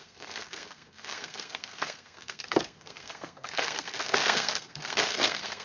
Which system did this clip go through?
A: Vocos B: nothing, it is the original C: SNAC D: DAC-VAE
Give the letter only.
C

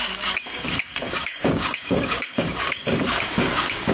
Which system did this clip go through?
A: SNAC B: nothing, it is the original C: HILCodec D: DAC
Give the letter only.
D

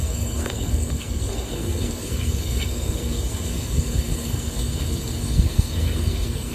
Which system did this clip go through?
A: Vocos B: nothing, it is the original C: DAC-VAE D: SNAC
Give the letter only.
D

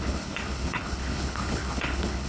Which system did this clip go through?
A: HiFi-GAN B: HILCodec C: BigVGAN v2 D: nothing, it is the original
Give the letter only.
B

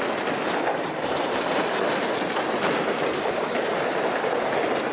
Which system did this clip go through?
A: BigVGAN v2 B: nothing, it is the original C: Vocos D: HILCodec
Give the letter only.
B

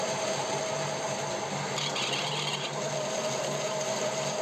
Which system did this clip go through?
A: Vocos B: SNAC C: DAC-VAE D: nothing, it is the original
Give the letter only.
D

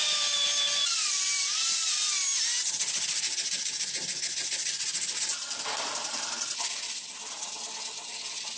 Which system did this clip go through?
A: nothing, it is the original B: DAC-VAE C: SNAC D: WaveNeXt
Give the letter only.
A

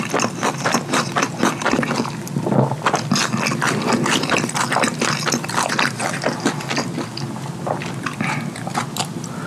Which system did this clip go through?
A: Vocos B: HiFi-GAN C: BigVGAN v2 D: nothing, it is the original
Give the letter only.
D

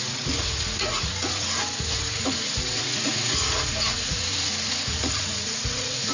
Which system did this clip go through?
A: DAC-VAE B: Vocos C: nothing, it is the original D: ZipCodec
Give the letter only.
B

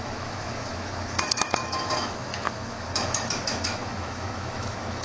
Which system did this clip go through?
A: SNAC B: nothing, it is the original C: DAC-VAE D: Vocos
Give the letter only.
C